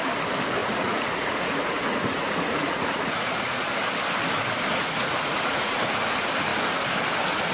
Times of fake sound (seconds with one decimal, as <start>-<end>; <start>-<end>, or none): 0.6-3.7; 4.7-5.8